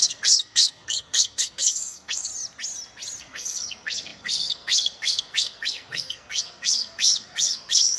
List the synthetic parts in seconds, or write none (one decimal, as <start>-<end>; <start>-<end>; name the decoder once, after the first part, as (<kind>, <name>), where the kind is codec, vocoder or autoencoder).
0.0-2.3 (codec, SNAC); 3.2-8.0